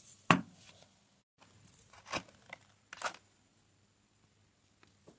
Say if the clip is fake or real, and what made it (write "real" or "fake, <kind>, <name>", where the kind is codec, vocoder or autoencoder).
real